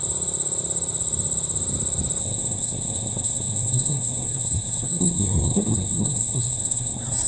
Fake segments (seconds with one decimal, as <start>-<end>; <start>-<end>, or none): 2.2-7.3